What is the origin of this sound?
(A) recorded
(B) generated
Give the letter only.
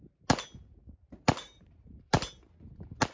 A